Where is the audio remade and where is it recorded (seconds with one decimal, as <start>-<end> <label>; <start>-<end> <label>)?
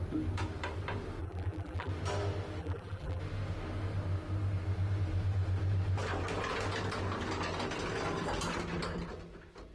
0.0-1.2 recorded; 1.2-1.9 remade; 1.9-2.6 recorded; 2.6-3.2 remade; 3.2-9.7 recorded